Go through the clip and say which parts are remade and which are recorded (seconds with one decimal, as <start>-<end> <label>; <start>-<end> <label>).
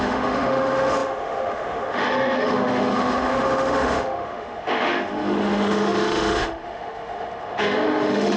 0.0-8.4 remade